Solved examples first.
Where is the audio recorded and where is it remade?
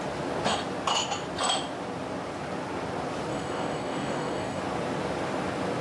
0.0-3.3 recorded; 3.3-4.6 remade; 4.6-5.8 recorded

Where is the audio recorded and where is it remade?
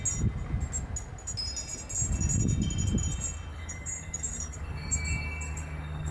0.0-3.5 recorded; 3.5-6.1 remade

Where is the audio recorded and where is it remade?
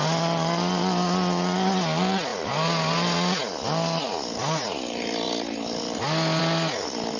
0.0-7.2 recorded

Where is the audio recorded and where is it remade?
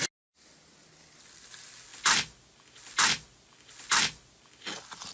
0.0-5.1 recorded